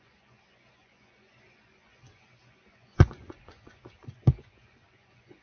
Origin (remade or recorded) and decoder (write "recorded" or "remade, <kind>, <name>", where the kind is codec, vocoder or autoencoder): remade, vocoder, Vocos